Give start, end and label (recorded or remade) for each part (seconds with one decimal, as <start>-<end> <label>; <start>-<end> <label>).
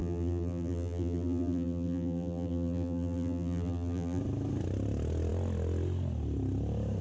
0.0-4.2 remade; 4.2-7.0 recorded